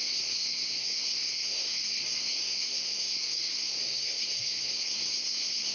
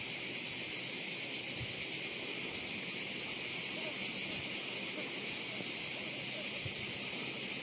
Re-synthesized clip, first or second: first